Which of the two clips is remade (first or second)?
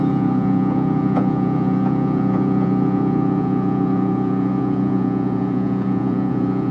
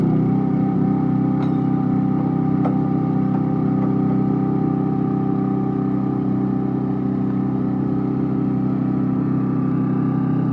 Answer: first